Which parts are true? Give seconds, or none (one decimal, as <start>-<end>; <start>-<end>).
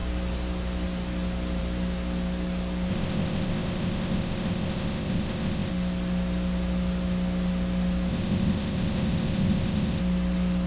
0.0-2.9; 5.7-8.1; 10.0-10.7